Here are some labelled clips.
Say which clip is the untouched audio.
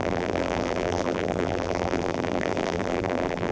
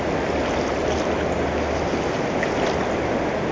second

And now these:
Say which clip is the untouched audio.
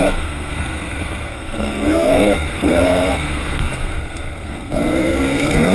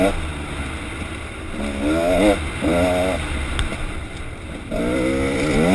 second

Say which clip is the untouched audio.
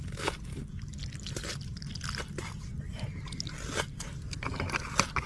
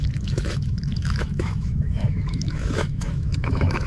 first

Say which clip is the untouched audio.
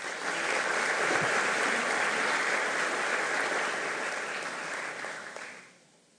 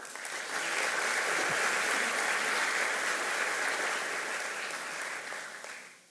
second